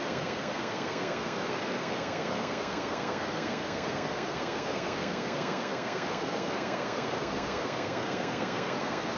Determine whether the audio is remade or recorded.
remade